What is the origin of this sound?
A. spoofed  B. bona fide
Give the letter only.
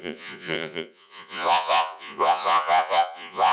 A